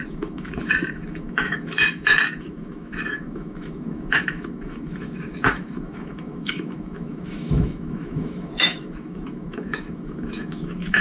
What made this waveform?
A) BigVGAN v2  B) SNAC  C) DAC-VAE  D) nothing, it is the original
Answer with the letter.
C